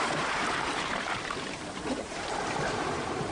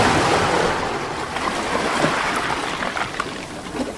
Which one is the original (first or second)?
second